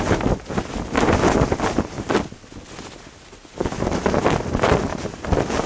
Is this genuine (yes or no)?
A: yes